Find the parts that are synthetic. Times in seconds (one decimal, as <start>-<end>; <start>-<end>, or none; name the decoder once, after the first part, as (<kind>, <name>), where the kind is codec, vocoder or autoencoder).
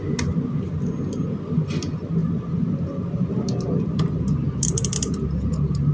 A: none